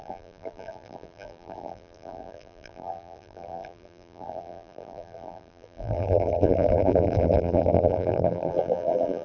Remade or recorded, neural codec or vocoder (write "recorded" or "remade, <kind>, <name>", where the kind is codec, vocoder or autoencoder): remade, vocoder, BigVGAN v2